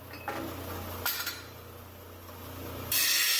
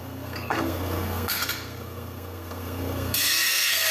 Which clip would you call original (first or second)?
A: first